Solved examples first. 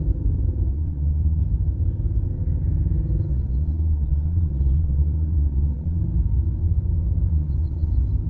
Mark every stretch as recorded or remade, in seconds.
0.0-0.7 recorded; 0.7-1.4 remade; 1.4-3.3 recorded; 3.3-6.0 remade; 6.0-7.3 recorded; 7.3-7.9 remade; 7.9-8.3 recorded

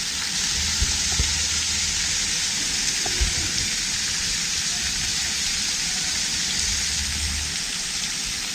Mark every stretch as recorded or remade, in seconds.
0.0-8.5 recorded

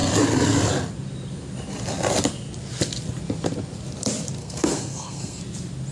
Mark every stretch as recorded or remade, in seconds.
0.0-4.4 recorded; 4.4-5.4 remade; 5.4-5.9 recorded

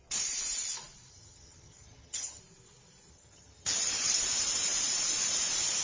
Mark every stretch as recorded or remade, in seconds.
0.0-1.1 recorded; 1.1-2.4 remade; 2.4-3.1 recorded; 3.1-4.2 remade; 4.2-5.8 recorded

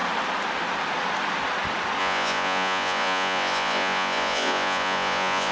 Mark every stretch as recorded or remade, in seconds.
0.0-2.0 recorded; 2.0-5.5 remade

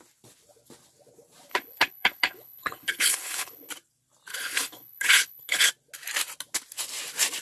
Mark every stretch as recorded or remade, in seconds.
0.0-1.5 recorded; 1.5-3.7 remade; 3.7-4.3 recorded; 4.3-5.7 remade; 5.7-7.4 recorded